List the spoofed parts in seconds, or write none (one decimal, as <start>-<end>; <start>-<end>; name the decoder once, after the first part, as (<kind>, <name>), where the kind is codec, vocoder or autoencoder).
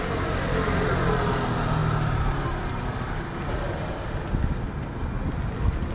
none